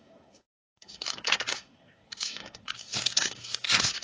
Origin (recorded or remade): remade